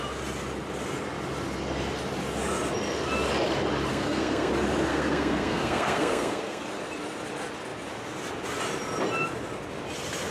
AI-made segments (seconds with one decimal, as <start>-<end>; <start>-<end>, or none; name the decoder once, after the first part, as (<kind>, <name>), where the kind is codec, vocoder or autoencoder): 3.9-4.5 (codec, SNAC); 4.9-6.6